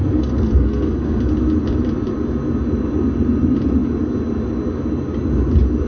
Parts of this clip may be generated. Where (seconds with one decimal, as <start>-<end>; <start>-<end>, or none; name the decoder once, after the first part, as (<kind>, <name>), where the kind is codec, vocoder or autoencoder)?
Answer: 0.0-1.2 (codec, SNAC)